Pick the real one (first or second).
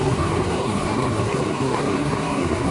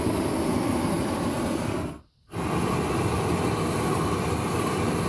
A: second